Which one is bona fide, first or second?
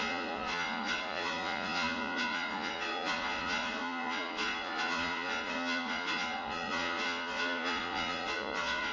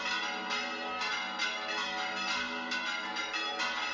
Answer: second